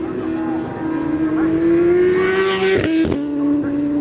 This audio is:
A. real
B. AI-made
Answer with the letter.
A